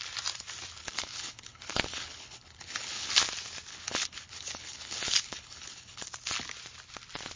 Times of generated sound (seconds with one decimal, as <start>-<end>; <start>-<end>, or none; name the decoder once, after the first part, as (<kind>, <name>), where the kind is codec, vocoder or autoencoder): 0.8-3.1 (codec, HILCodec); 3.7-6.0